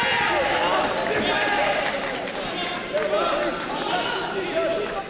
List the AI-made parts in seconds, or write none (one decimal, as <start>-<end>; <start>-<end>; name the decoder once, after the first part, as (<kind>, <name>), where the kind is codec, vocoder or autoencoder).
none